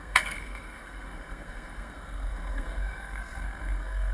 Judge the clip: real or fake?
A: fake